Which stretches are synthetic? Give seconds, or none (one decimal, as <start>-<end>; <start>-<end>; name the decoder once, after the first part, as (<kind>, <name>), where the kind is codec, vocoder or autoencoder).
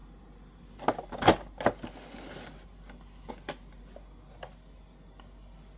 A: none